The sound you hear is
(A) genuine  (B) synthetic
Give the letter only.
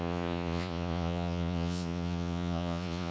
B